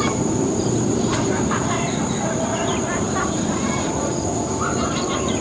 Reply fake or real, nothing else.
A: fake